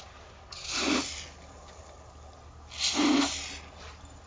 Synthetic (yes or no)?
no